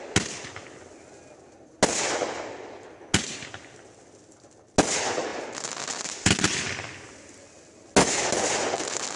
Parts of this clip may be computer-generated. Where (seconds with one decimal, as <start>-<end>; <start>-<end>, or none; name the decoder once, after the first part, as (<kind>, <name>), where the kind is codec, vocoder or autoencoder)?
none